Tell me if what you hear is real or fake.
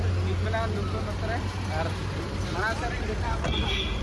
real